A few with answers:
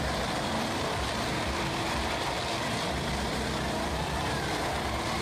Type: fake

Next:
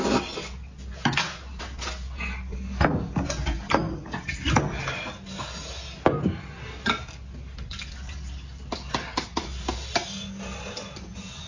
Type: real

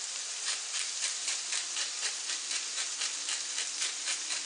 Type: fake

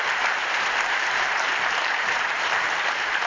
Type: fake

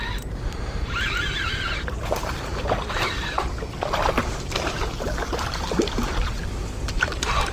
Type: fake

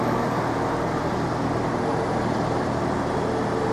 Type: real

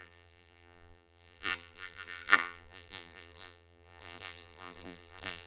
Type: fake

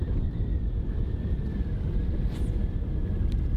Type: fake